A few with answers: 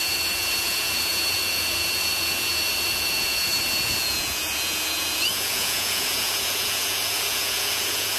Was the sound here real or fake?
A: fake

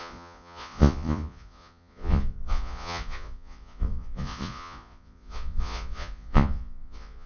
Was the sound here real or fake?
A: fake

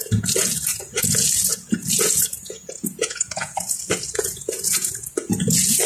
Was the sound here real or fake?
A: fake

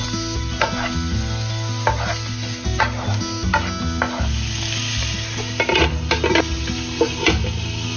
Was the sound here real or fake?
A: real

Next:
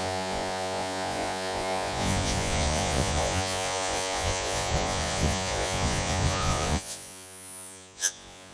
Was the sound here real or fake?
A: fake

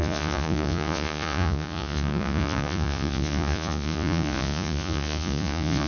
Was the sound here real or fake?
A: fake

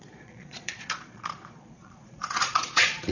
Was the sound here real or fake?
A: fake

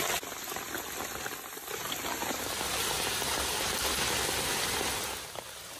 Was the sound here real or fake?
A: real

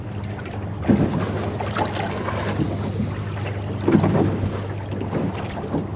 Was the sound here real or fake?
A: real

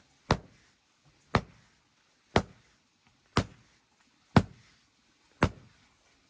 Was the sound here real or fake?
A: real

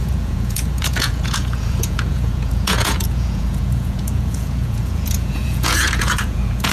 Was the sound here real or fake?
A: fake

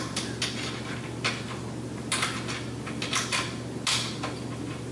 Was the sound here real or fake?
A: real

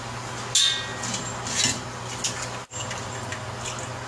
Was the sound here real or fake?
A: real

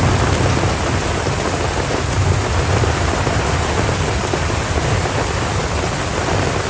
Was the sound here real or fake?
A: real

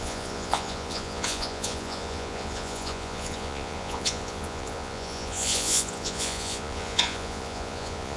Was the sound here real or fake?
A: fake